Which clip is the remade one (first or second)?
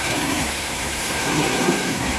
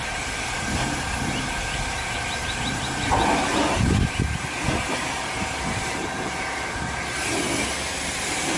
first